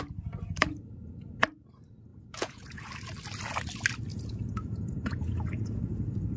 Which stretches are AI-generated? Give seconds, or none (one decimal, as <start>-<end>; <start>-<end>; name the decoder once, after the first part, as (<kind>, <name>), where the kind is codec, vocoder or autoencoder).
2.1-2.9 (vocoder, Vocos); 4.1-5.8